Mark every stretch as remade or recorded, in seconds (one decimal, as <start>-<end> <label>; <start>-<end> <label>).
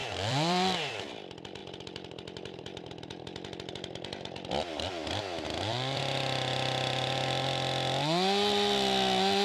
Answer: 0.0-0.9 remade; 0.9-1.6 recorded; 1.6-6.0 remade; 6.0-9.4 recorded